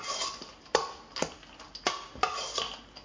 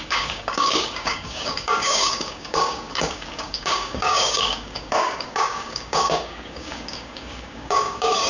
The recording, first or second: first